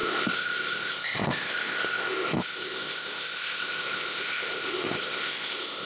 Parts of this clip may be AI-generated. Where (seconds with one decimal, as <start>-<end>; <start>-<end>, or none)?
0.0-5.9